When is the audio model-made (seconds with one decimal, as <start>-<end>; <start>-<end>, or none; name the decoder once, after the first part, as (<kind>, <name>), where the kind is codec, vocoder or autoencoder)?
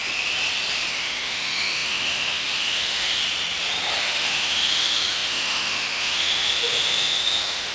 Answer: 0.9-3.2 (autoencoder, DAC-VAE); 4.0-7.7